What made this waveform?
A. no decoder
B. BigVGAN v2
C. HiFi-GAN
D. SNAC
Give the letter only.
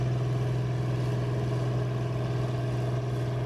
A